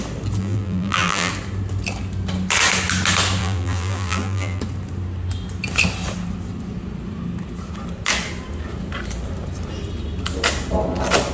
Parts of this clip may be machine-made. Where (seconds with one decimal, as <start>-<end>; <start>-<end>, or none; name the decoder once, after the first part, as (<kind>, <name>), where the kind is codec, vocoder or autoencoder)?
0.4-1.3 (vocoder, BigVGAN v2); 3.4-4.6